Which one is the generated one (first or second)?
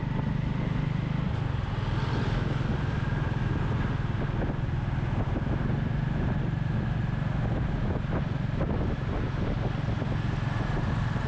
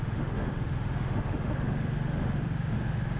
second